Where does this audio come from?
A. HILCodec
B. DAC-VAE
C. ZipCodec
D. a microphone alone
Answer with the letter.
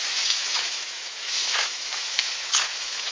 B